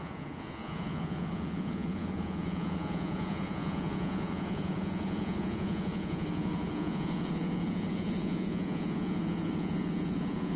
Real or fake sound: fake